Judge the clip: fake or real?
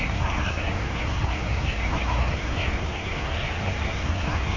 fake